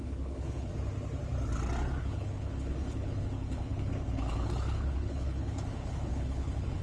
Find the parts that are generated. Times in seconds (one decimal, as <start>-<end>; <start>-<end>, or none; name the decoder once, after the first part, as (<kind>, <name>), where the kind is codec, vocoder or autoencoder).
0.0-0.7 (codec, HILCodec); 2.0-6.8